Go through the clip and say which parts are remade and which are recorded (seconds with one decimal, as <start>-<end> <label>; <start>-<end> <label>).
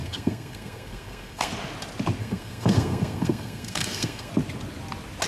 0.0-1.5 remade; 1.5-2.2 recorded; 2.2-4.3 remade; 4.3-5.3 recorded